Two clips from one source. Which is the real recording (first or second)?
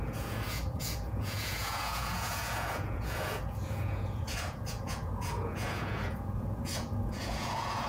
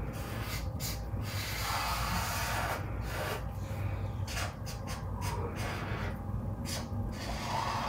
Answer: second